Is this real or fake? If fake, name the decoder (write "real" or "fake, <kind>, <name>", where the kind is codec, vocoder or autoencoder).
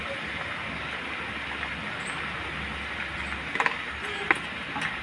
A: real